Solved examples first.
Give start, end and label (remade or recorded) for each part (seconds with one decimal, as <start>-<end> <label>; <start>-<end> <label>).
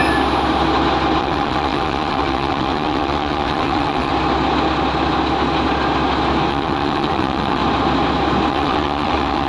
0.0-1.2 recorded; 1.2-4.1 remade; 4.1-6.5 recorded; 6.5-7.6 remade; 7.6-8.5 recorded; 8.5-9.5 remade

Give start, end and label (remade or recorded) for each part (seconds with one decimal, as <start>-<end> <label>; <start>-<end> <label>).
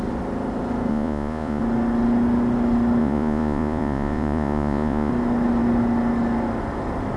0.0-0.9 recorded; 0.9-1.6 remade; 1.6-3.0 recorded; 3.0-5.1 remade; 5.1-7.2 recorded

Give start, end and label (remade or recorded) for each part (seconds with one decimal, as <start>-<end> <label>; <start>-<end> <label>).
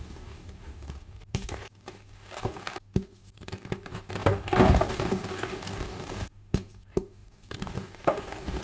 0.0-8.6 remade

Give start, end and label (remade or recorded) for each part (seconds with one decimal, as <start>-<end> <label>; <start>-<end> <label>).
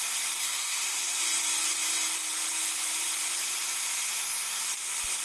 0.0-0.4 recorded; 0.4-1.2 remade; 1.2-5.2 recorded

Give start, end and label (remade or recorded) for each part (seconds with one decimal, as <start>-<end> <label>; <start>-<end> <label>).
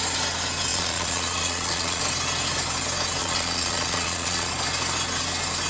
0.0-0.7 recorded; 0.7-2.0 remade; 2.0-3.2 recorded; 3.2-4.5 remade; 4.5-5.7 recorded